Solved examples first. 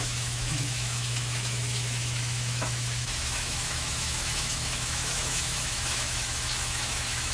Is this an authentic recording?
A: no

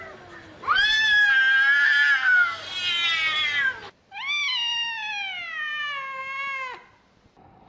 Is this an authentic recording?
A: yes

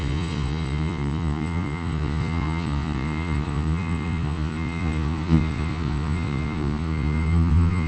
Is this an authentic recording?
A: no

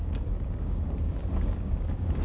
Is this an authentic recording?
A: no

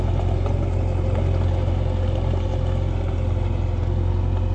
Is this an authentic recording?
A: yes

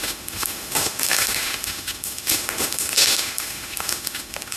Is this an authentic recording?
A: no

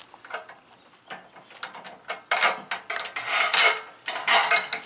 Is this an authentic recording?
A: yes